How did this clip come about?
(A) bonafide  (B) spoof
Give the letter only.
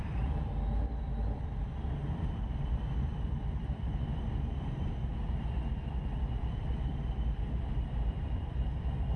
B